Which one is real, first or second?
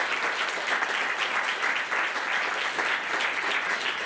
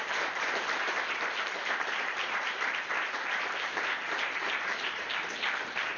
first